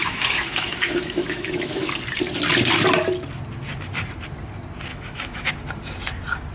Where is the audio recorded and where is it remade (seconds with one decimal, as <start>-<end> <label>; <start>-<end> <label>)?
0.0-1.9 remade; 1.9-4.9 recorded; 4.9-5.5 remade; 5.5-6.5 recorded